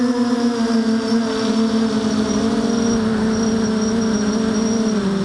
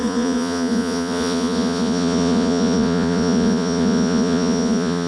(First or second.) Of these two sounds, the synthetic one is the second